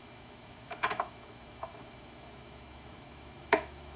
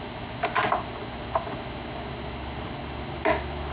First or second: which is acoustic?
second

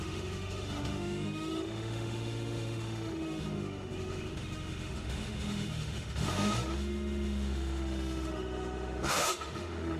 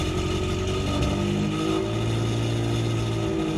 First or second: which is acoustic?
second